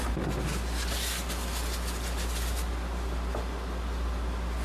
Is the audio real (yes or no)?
yes